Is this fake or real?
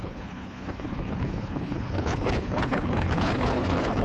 fake